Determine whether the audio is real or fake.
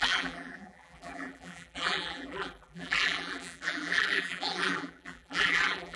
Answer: fake